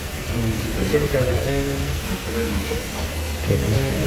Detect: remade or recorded remade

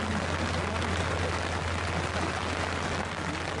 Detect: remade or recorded recorded